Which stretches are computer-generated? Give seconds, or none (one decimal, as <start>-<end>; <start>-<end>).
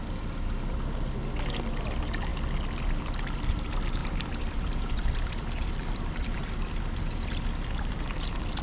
4.0-8.6